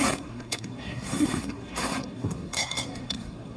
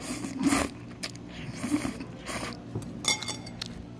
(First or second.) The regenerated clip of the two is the first